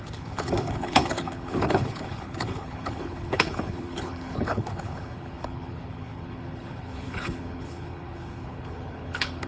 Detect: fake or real fake